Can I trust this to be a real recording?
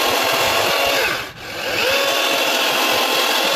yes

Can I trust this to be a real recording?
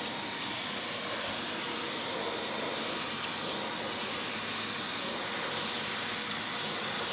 yes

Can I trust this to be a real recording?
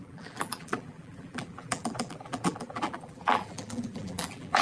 no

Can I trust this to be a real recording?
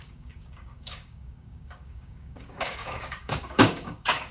no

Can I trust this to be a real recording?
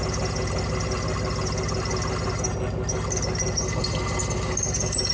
yes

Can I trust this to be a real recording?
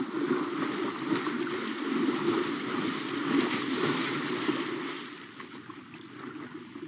yes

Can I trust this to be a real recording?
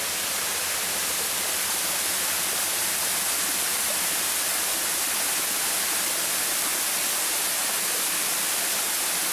yes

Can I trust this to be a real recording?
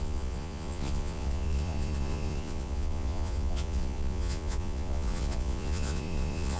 no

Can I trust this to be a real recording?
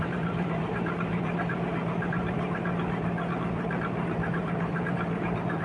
no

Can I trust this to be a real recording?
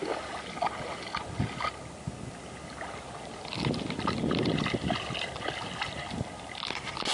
yes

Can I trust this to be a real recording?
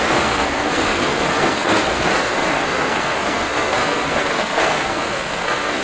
no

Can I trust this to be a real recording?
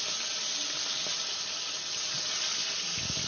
yes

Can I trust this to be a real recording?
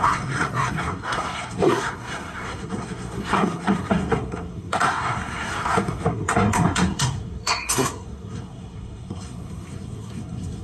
no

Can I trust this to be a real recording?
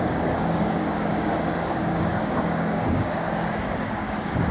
no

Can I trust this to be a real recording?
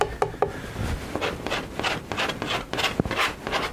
yes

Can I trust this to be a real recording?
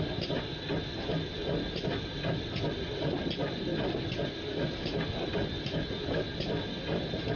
yes